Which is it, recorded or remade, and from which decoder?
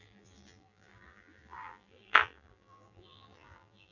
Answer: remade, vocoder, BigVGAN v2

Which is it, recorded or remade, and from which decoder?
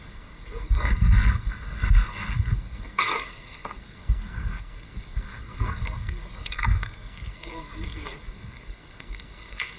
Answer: remade, codec, SNAC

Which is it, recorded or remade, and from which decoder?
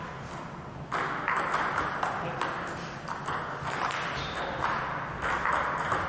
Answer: recorded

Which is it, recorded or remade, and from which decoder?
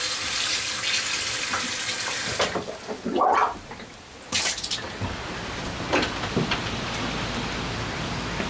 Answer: recorded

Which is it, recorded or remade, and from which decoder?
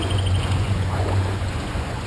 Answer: remade, vocoder, Vocos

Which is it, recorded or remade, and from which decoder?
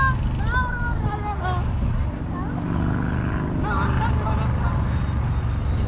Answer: recorded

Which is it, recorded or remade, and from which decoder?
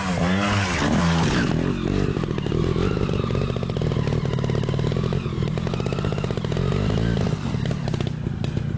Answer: recorded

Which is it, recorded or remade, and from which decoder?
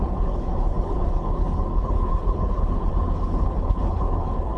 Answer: remade, codec, HILCodec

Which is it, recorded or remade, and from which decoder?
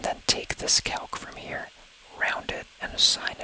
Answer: recorded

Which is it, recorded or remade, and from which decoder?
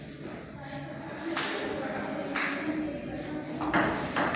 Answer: recorded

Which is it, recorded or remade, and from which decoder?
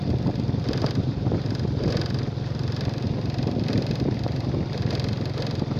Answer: recorded